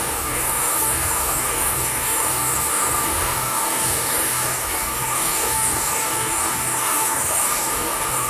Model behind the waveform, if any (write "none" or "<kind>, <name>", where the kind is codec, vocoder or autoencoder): codec, DAC